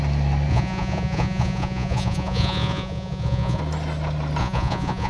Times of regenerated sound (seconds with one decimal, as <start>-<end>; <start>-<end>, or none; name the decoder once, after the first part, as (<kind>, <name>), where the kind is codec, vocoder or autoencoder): 0.5-3.6 (vocoder, Vocos); 4.4-5.1